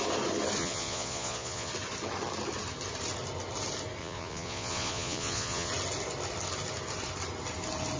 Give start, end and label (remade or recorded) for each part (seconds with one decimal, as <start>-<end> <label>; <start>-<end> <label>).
0.0-0.6 recorded; 0.6-1.7 remade; 1.7-4.0 recorded; 4.0-5.7 remade; 5.7-8.0 recorded